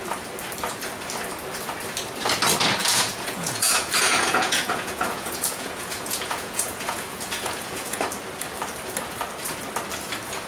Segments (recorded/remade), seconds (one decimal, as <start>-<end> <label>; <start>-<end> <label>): 0.0-2.8 recorded; 2.8-8.0 remade; 8.0-10.5 recorded